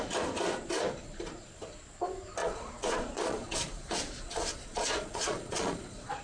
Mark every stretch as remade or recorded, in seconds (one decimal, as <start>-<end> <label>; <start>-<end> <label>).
0.0-2.4 recorded; 2.4-6.2 remade